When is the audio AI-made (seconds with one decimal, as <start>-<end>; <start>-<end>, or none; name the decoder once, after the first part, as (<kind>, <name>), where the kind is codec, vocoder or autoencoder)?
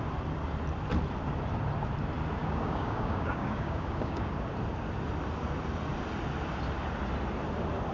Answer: 2.4-4.3 (codec, DAC)